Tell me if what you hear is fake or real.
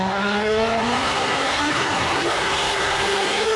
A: fake